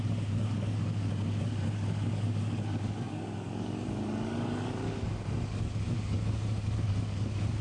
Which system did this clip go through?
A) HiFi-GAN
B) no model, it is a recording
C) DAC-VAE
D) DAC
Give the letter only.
D